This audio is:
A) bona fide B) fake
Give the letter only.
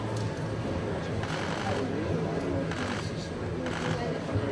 A